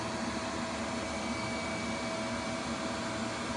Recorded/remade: recorded